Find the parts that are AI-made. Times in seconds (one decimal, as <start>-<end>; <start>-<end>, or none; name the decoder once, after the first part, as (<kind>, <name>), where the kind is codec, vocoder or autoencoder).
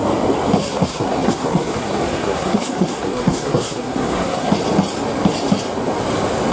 0.6-4.5 (codec, SNAC)